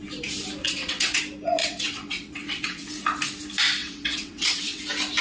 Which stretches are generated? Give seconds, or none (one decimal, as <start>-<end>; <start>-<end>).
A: 0.6-1.2; 1.6-2.9; 3.8-4.8